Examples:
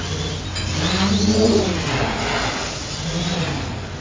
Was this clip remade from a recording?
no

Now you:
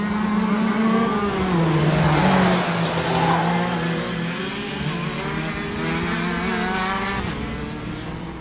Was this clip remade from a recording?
no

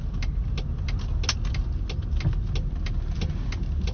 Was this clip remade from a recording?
no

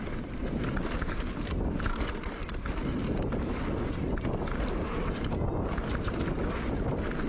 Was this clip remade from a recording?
no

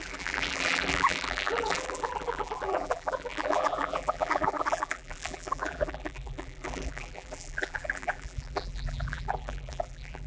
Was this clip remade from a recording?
yes